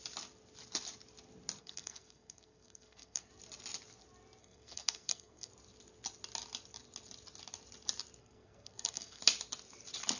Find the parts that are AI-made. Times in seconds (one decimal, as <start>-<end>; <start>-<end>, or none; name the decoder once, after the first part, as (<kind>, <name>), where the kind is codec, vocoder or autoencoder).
1.6-3.3 (codec, SNAC); 4.4-5.5; 8.2-9.2